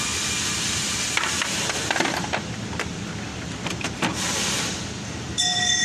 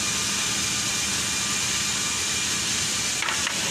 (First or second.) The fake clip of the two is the first